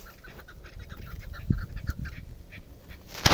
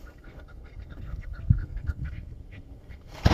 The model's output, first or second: second